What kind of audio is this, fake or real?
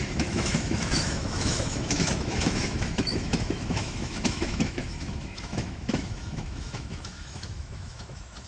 fake